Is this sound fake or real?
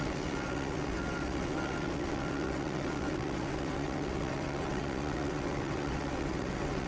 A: fake